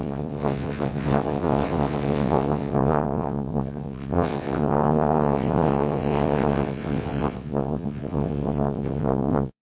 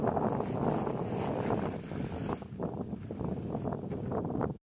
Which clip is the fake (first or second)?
first